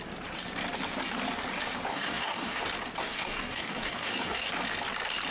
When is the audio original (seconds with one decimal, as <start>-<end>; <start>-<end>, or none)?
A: 0.0-1.9; 2.6-3.1; 4.5-5.3